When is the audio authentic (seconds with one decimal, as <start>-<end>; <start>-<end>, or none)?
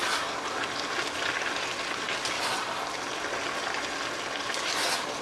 0.0-5.2